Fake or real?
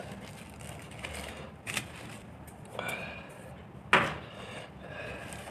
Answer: real